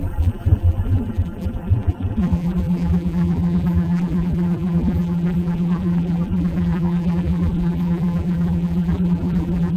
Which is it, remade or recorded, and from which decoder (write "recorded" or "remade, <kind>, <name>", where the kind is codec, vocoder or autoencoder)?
remade, vocoder, BigVGAN v2